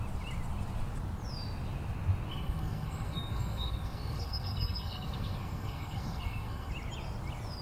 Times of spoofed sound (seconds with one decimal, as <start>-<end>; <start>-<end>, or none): 2.3-6.7